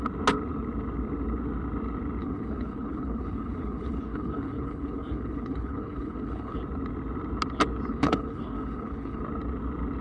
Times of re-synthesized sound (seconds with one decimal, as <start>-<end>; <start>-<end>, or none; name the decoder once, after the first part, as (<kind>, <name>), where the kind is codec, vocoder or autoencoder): 2.2-6.6 (codec, HILCodec); 7.9-9.2